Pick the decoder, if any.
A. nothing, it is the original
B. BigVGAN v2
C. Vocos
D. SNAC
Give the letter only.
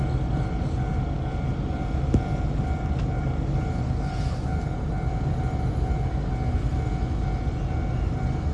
A